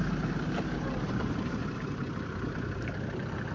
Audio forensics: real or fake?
fake